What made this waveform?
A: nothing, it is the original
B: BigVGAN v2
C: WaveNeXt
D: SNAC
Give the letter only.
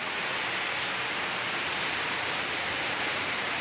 A